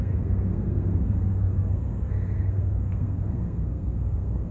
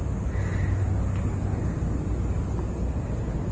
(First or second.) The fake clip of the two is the first